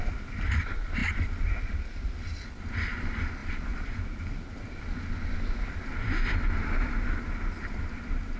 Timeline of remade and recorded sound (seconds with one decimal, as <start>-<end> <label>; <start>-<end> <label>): 0.0-8.4 recorded